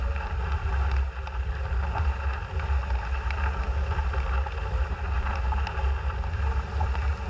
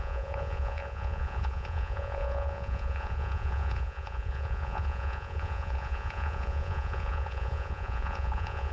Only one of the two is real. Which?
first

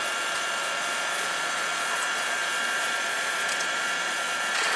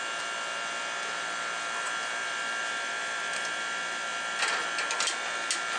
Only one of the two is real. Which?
second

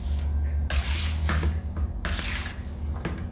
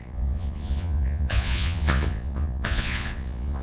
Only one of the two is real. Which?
first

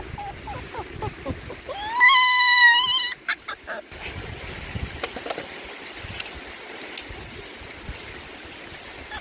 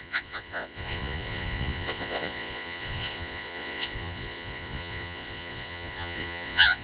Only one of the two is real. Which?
first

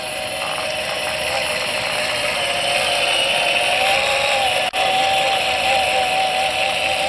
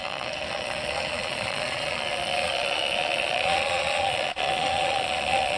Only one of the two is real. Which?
first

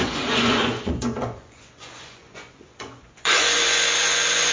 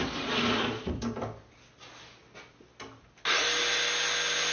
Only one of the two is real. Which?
second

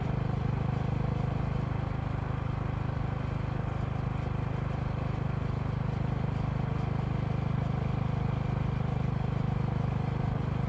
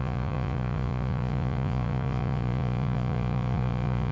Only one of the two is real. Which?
first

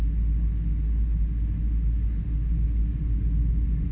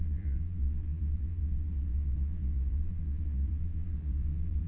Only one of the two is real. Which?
first